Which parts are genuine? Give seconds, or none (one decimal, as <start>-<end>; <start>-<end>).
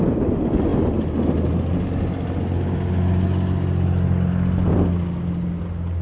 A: 0.0-6.0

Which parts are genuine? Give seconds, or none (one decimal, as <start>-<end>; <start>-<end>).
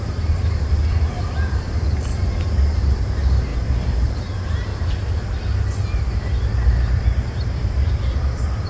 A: 2.1-2.8; 4.7-5.9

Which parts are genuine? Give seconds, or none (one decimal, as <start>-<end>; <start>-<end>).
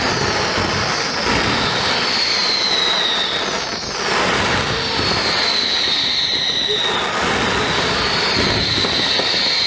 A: 0.0-9.7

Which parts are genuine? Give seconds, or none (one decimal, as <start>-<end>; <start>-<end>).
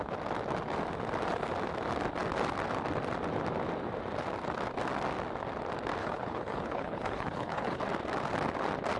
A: 0.0-6.0; 7.8-9.0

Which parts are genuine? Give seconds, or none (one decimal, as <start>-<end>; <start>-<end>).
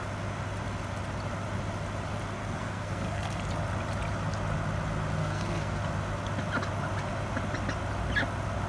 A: 0.0-2.4; 3.4-5.2; 5.8-8.7